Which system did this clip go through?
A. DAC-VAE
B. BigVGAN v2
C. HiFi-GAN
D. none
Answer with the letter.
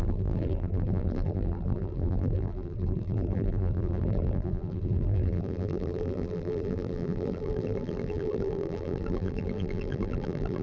B